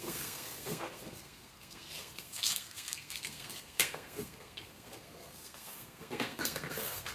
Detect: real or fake fake